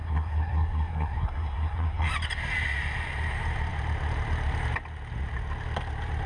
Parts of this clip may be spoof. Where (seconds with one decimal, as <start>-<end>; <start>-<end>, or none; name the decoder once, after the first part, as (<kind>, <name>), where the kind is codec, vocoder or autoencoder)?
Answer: 0.0-2.1 (codec, SNAC)